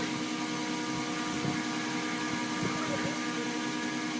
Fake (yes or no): no